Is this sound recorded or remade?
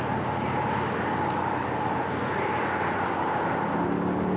recorded